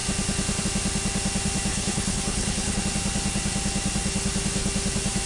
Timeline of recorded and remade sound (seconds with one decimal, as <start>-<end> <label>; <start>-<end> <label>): 0.0-1.7 recorded; 1.7-2.8 remade; 2.8-5.3 recorded